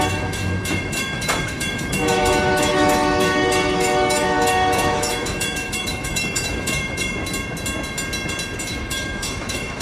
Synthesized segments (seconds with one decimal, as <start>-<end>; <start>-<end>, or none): 0.0-7.2; 8.6-9.8